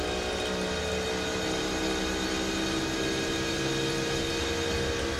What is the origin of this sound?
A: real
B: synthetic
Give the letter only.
A